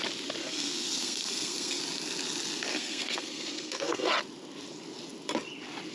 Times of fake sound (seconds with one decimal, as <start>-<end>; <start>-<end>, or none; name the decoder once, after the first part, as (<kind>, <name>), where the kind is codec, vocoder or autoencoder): 0.4-1.8 (codec, SNAC); 2.7-4.1